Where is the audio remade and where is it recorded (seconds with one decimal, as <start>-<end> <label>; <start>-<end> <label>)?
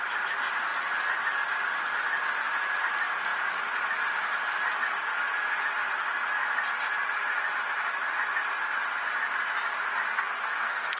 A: 0.0-10.1 recorded; 10.1-11.0 remade